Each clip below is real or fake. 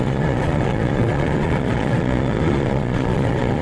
fake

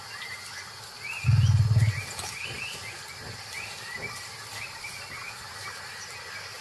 real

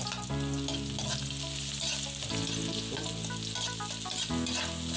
real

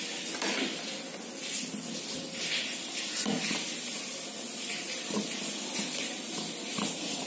real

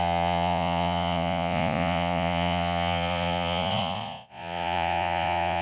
fake